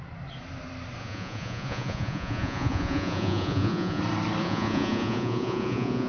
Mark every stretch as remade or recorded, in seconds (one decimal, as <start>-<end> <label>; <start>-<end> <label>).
0.0-1.0 recorded; 1.0-4.0 remade; 4.0-4.4 recorded; 4.4-6.1 remade